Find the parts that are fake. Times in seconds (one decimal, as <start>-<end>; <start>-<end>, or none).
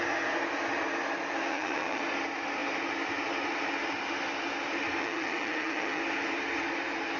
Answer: 1.5-2.0; 5.0-6.0